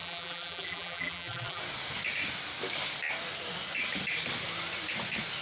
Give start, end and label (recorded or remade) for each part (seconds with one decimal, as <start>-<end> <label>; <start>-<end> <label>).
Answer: 0.0-1.6 remade; 1.6-5.4 recorded